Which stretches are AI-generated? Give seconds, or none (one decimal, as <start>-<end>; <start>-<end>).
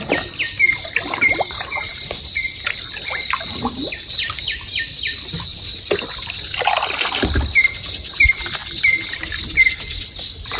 none